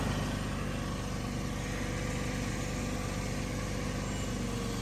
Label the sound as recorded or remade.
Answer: recorded